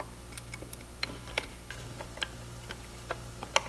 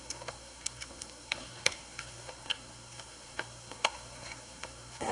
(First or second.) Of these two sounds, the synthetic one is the second